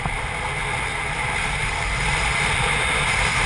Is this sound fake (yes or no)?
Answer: no